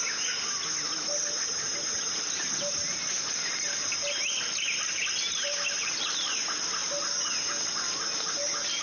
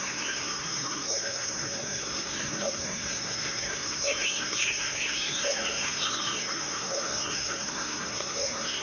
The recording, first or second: first